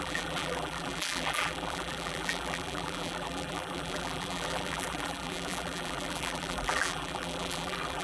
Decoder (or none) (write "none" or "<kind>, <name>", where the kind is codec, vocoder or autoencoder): vocoder, BigVGAN v2